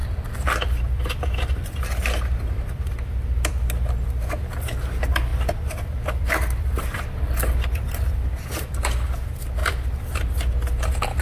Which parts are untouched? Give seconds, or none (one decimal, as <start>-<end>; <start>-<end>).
3.5-5.3; 8.8-9.6; 10.3-11.2